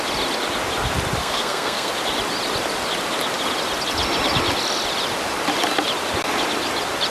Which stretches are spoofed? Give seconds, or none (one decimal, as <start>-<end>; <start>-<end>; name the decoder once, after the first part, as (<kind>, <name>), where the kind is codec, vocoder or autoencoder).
1.2-1.9 (codec, SNAC)